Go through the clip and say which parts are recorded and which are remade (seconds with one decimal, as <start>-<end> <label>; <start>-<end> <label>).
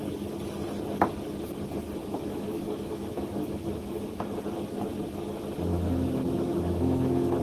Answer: 0.0-2.0 recorded; 2.0-4.3 remade; 4.3-5.7 recorded; 5.7-7.4 remade